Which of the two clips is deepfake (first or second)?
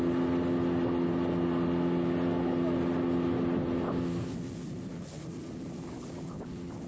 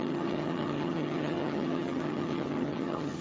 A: second